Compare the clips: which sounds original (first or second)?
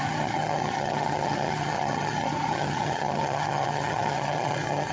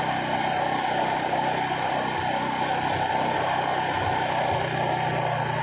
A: second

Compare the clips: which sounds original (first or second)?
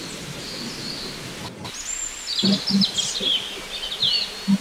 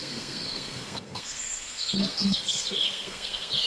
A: first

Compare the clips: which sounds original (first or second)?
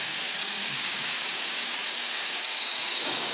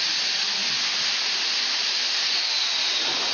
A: second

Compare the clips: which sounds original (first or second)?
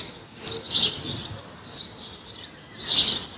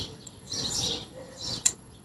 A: first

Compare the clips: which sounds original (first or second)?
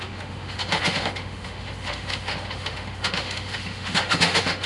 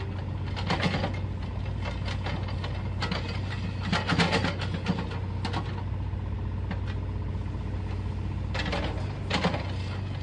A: second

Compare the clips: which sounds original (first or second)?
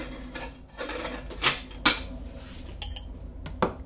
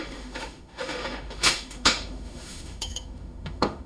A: first